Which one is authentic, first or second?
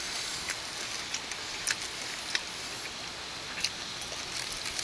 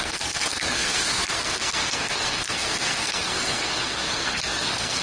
first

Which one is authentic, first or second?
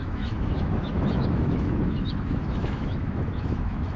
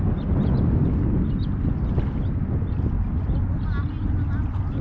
second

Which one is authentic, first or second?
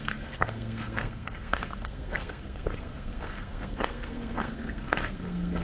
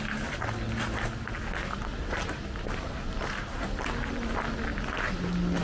second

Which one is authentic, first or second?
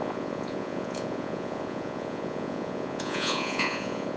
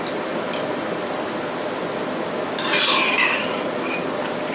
second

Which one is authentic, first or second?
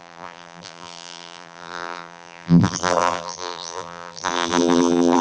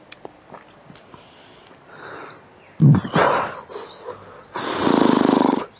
second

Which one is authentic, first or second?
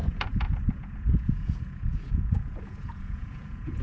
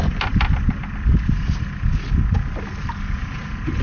second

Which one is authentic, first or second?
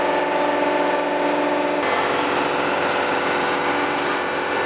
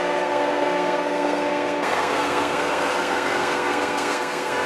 first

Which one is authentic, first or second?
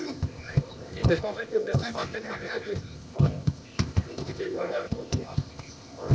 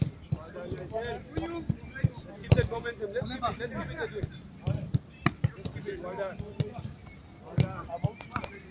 second